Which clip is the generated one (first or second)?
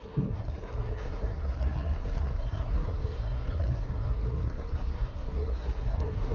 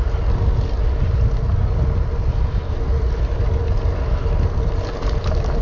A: first